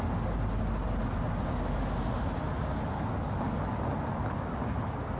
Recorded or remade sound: recorded